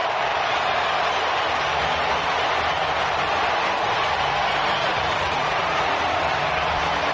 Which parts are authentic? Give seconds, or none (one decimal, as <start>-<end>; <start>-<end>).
0.0-4.8; 6.2-7.1